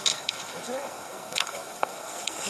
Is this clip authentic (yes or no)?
no